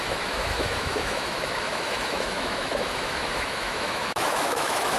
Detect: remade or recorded remade